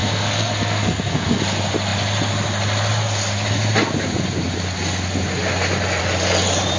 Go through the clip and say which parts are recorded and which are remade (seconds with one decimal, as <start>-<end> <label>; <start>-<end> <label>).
0.0-1.4 remade; 1.4-6.8 recorded